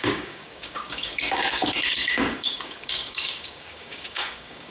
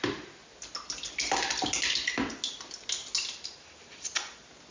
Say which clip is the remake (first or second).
first